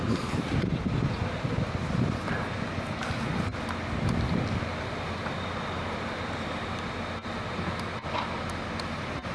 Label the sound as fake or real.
real